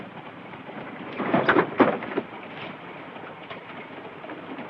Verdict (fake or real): fake